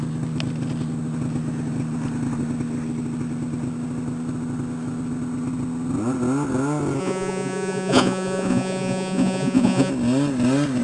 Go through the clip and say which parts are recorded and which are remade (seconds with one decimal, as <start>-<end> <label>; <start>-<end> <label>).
0.0-7.0 recorded; 7.0-9.9 remade; 9.9-10.8 recorded